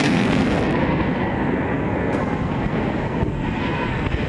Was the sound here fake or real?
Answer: fake